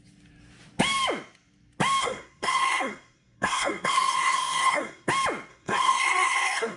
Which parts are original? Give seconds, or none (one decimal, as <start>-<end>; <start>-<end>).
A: 0.0-2.0; 5.1-5.5